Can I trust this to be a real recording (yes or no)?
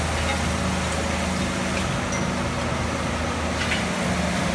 yes